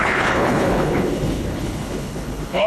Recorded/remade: remade